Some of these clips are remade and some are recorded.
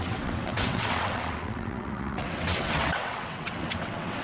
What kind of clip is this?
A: remade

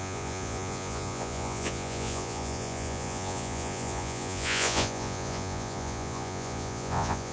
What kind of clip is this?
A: remade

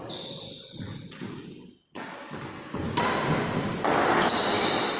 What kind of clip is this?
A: recorded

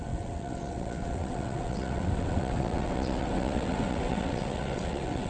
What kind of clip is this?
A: remade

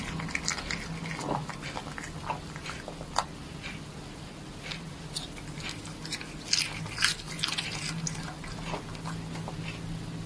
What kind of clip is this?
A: recorded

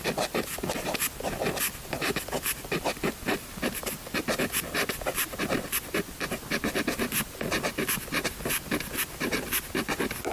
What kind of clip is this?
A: recorded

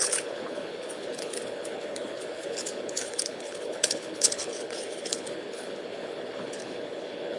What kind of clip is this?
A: remade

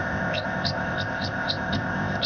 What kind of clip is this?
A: remade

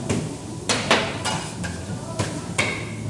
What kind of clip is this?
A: recorded